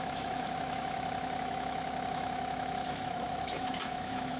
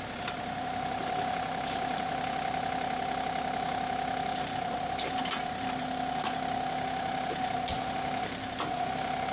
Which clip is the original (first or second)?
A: second